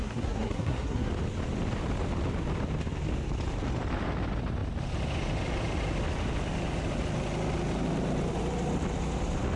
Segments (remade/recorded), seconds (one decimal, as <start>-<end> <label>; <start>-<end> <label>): 0.0-1.1 remade; 1.1-9.6 recorded